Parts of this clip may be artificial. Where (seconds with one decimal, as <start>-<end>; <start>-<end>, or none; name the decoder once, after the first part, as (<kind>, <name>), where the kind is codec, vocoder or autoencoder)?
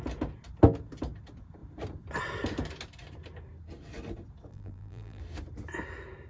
4.5-5.2 (vocoder, BigVGAN v2)